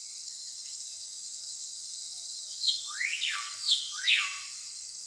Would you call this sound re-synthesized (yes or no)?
yes